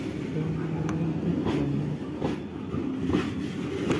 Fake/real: real